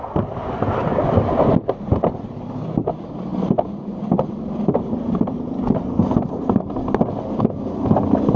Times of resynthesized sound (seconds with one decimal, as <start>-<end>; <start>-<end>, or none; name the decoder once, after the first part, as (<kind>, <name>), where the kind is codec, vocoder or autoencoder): 0.9-1.4 (vocoder, BigVGAN v2)